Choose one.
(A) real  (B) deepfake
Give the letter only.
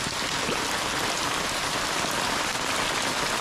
A